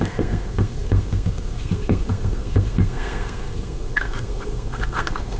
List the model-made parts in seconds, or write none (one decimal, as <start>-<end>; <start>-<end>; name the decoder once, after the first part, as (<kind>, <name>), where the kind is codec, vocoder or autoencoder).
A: 0.0-5.4 (codec, SNAC)